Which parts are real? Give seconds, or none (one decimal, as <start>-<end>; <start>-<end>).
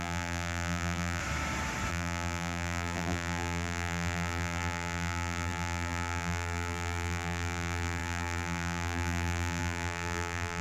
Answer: 1.2-1.9